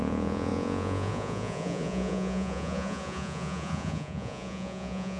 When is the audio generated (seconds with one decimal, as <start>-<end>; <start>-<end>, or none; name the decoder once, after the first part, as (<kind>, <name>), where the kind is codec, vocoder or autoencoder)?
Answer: 0.0-5.2 (vocoder, Vocos)